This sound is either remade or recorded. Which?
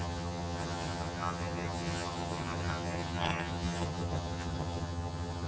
remade